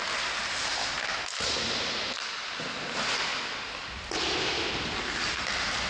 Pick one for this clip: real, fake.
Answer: real